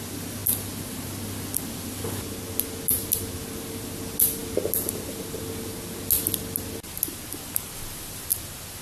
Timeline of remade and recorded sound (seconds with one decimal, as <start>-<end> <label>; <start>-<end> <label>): 0.0-8.8 recorded

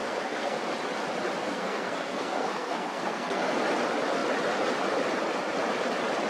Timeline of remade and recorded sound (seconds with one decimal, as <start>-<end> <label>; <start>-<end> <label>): 0.0-0.6 remade; 0.6-1.4 recorded; 1.4-3.6 remade; 3.6-6.3 recorded

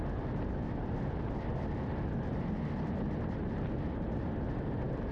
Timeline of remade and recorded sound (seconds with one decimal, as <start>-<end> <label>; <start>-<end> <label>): 0.0-5.1 recorded

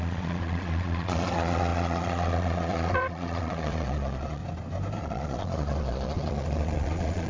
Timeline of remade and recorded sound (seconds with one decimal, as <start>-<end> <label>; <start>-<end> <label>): 0.0-4.4 remade; 4.4-5.0 recorded; 5.0-7.3 remade